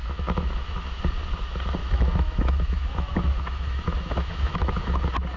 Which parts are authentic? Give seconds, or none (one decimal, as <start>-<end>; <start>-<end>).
1.0-1.8; 5.0-5.4